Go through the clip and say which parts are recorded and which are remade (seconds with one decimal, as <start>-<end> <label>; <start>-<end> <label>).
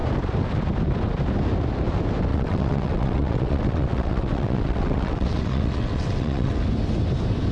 0.0-2.3 recorded; 2.3-6.6 remade; 6.6-7.5 recorded